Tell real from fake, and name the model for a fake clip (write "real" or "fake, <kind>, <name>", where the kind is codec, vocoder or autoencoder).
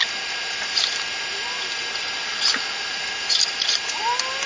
real